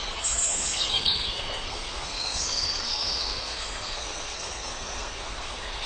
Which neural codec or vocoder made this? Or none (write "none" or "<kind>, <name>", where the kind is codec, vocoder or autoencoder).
codec, SNAC